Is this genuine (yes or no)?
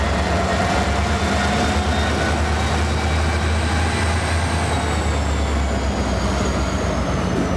yes